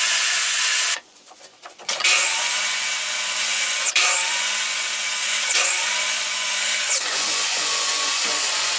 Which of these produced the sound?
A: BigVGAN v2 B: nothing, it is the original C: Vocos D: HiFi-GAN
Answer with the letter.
C